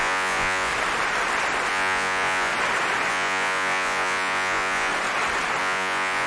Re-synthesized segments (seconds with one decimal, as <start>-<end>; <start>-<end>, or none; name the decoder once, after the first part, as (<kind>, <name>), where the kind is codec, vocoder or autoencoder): 0.0-0.7 (vocoder, Vocos); 1.7-2.5; 3.1-4.9; 5.6-6.3